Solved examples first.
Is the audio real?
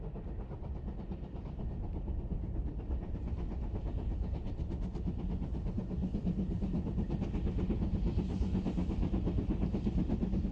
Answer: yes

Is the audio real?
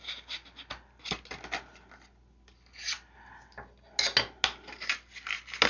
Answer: yes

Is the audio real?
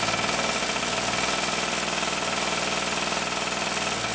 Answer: yes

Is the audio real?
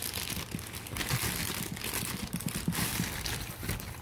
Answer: yes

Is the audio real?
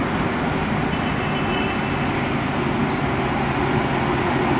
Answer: yes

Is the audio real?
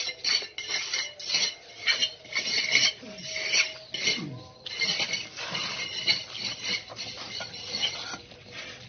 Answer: yes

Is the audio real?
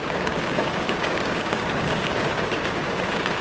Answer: no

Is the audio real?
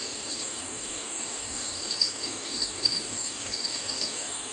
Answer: no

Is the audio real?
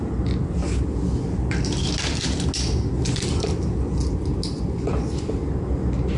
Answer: yes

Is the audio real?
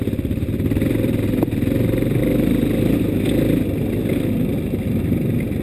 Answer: yes